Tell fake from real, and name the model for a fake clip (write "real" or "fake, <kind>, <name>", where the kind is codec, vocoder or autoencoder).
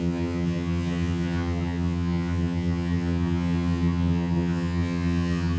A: fake, vocoder, HiFi-GAN